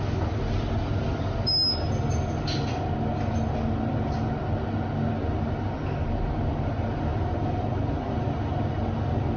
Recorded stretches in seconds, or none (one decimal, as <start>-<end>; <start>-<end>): 0.0-9.4